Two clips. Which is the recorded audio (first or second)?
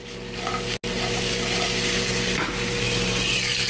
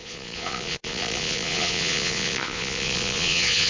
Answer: first